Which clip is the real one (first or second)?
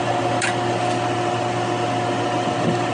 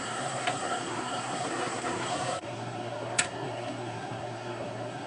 first